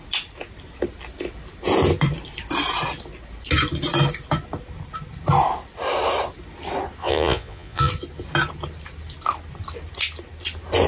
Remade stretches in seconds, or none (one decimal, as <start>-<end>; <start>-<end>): 7.0-7.9